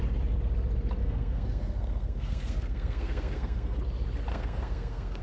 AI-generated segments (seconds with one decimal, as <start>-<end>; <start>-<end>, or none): 1.0-3.8; 4.3-5.2